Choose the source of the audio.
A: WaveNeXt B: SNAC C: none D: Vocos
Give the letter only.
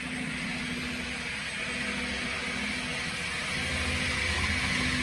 C